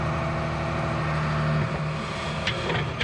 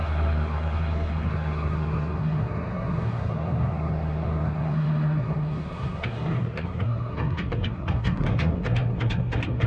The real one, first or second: first